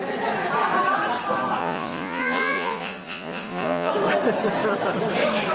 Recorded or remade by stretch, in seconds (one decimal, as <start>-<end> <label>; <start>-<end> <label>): 0.0-1.6 recorded; 1.6-3.9 remade; 3.9-5.5 recorded